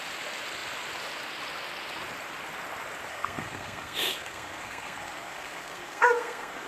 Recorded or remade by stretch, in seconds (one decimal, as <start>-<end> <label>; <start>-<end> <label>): 0.0-3.1 recorded; 3.1-6.7 remade